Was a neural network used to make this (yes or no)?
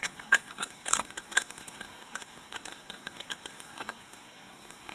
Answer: yes